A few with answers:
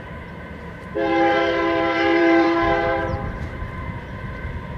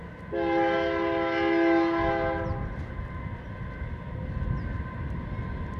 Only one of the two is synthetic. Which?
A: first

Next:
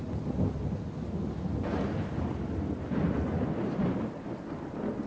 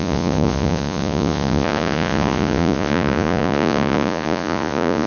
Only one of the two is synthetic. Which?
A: second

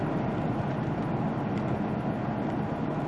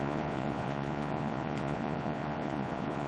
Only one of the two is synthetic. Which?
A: second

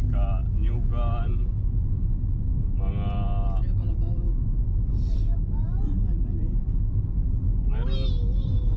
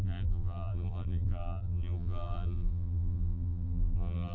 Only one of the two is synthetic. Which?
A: second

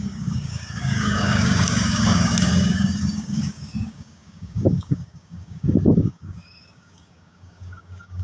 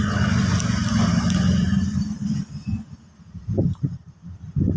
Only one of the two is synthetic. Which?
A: first